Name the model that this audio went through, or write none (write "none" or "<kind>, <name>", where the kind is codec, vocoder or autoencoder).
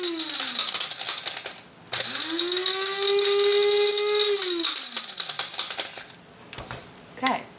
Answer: none